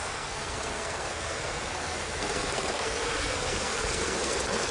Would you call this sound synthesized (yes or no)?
yes